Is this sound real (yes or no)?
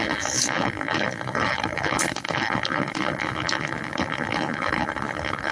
no